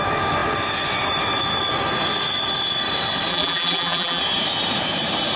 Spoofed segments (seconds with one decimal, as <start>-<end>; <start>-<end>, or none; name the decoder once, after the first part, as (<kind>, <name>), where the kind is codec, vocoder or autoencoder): 3.3-4.2 (vocoder, BigVGAN v2)